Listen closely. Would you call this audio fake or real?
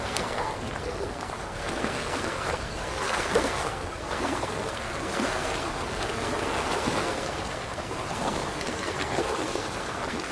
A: fake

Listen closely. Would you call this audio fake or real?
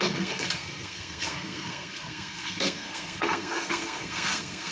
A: fake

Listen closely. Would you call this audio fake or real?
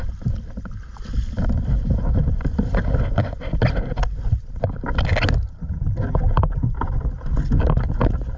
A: real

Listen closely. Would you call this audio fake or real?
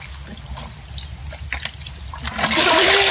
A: real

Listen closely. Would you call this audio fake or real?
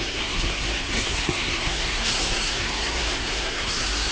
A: fake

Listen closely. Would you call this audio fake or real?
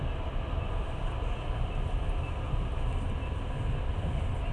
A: real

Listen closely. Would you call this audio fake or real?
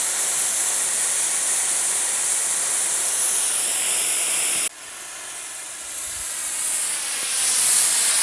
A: real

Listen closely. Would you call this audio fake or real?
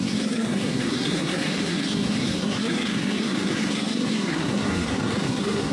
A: fake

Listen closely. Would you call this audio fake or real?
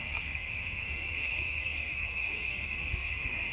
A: fake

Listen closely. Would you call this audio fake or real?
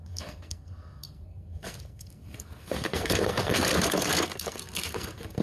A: fake